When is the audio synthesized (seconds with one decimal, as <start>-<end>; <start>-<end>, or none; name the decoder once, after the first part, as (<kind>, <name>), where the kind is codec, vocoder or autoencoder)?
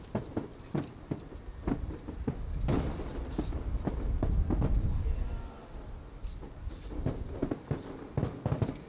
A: 0.5-5.6 (vocoder, BigVGAN v2); 6.2-7.1